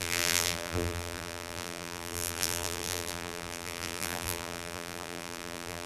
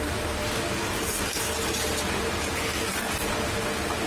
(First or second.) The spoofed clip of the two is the first